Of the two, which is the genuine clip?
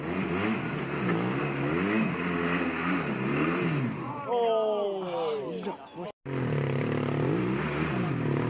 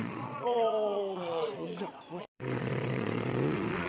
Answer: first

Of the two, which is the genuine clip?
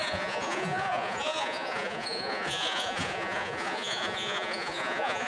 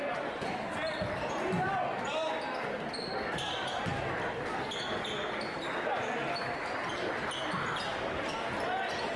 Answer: second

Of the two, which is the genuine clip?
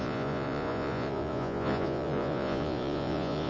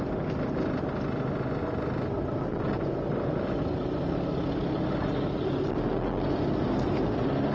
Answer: second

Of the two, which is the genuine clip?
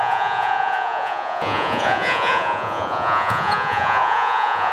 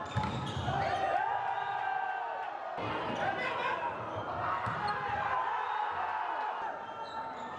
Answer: second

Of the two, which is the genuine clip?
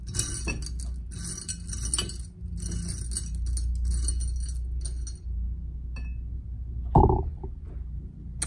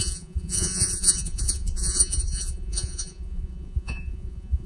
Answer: first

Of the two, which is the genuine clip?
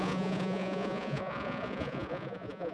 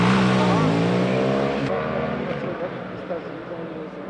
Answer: second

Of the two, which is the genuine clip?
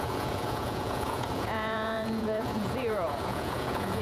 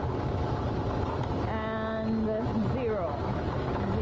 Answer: second